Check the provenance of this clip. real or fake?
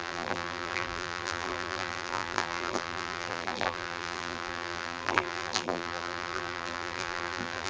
fake